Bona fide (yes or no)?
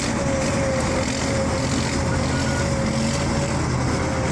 yes